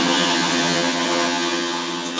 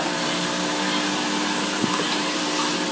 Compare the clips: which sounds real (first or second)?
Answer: second